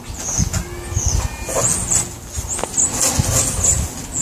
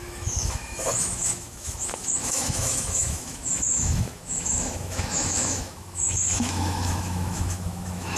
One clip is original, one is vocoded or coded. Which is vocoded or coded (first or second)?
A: second